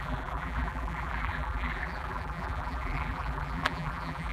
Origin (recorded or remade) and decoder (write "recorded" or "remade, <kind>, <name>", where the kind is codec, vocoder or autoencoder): remade, vocoder, BigVGAN v2